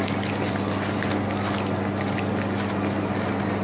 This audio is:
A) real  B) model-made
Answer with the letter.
A